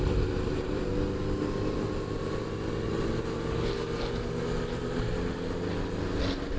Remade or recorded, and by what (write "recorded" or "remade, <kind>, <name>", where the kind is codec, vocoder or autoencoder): recorded